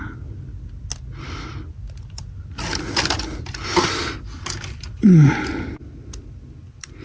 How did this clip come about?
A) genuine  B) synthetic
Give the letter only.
A